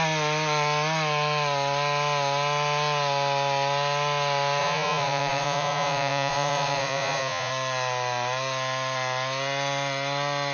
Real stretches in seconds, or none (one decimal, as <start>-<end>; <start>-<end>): 0.0-4.6; 7.5-10.5